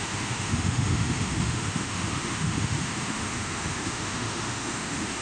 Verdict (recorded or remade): remade